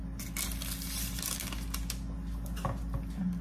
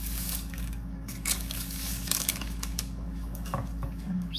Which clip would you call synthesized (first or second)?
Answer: second